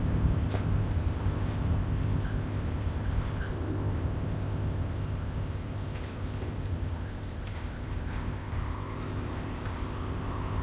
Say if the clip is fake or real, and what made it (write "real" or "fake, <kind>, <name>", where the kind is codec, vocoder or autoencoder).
fake, codec, ZipCodec